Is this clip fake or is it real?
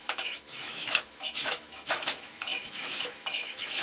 fake